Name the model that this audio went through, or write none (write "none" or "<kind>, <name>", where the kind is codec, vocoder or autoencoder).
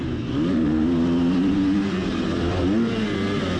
none